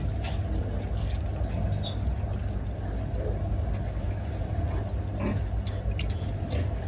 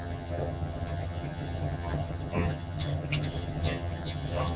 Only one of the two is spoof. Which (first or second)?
second